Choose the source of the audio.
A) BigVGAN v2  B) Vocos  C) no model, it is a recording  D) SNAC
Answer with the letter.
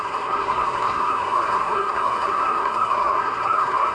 D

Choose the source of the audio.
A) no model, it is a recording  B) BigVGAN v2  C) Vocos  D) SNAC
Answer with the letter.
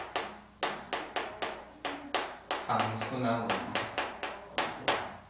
A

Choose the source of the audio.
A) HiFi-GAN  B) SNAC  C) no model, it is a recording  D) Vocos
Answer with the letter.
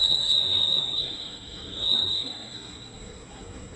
B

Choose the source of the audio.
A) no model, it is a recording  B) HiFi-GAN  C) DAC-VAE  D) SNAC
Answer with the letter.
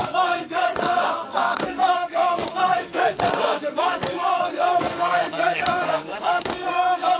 D